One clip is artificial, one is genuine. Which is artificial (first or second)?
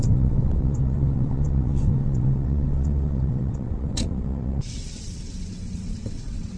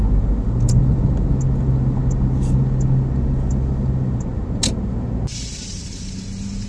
first